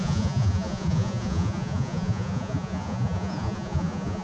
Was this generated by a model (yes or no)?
yes